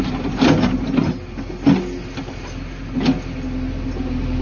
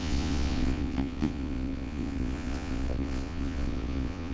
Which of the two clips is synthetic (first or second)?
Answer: second